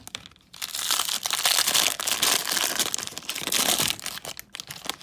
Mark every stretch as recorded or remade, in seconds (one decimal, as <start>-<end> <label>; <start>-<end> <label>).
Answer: 0.0-0.7 recorded; 0.7-1.5 remade; 1.5-2.4 recorded; 2.4-4.3 remade; 4.3-5.0 recorded